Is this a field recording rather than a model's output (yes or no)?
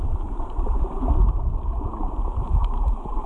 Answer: yes